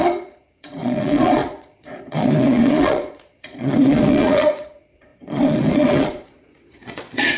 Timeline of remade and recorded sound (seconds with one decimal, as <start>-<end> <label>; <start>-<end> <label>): 0.0-7.4 remade